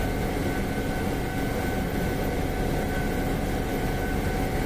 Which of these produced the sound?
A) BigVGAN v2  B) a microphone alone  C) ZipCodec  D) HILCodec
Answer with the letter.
B